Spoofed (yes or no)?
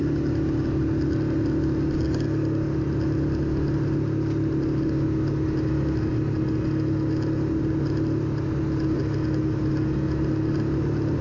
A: no